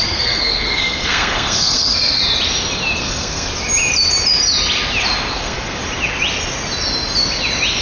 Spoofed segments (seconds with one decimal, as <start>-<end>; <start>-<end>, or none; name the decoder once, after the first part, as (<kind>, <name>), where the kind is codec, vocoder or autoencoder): 0.0-2.2 (codec, SNAC); 3.0-3.5; 5.3-5.8